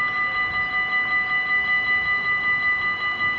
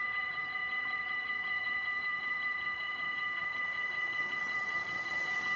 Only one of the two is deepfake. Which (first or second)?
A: second